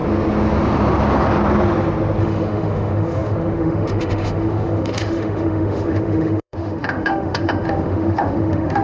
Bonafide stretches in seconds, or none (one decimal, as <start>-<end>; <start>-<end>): 0.0-2.2

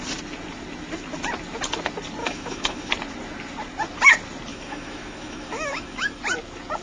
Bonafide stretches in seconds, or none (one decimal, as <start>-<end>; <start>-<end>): 0.0-2.2; 2.9-4.5; 6.2-6.8

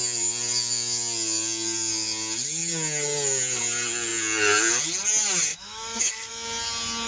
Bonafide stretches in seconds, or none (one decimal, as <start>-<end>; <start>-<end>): 0.0-5.5; 6.3-7.1

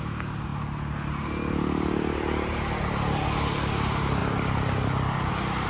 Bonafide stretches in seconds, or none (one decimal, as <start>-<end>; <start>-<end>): 0.0-5.7

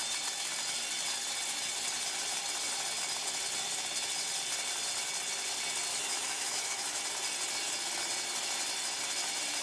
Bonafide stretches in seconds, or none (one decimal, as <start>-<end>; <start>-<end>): 0.0-5.9; 7.0-9.6